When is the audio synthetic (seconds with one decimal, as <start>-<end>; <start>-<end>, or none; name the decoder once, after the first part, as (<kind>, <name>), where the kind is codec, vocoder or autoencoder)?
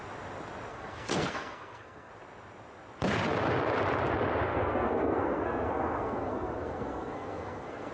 0.7-2.1 (codec, SNAC); 4.5-7.9